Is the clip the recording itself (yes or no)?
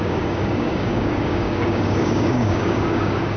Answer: no